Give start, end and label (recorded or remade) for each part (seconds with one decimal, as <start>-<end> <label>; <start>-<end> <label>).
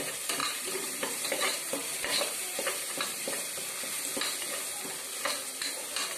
0.0-0.4 recorded; 0.4-3.5 remade; 3.5-6.2 recorded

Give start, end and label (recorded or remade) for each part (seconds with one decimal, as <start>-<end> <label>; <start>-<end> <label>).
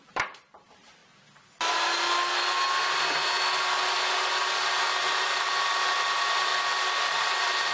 0.0-1.0 remade; 1.0-5.4 recorded; 5.4-6.5 remade; 6.5-7.1 recorded; 7.1-7.7 remade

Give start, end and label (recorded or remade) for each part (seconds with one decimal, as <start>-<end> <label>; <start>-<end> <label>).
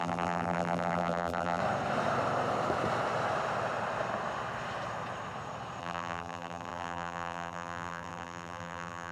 0.0-1.6 remade; 1.6-5.8 recorded; 5.8-9.1 remade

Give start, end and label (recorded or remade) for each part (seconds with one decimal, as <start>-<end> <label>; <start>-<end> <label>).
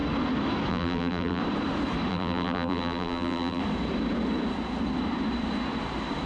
0.0-0.7 recorded; 0.7-1.4 remade; 1.4-2.1 recorded; 2.1-3.6 remade; 3.6-6.3 recorded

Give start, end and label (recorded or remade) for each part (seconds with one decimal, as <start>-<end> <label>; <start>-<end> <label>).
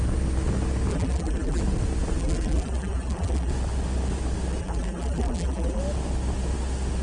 0.0-0.9 recorded; 0.9-1.6 remade; 1.6-2.2 recorded; 2.2-3.5 remade; 3.5-4.6 recorded; 4.6-5.8 remade; 5.8-7.0 recorded